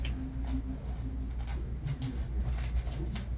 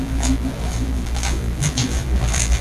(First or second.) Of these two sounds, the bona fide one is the first